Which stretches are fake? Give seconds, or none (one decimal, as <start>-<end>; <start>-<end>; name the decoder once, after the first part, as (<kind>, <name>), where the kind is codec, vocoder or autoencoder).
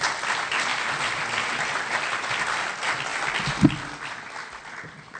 none